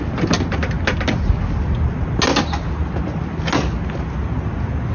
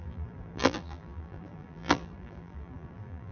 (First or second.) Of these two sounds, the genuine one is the first